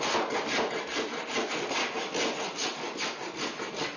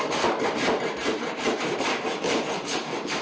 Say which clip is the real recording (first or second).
first